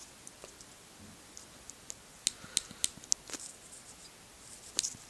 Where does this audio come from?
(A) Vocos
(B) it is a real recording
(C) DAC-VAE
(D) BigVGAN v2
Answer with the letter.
B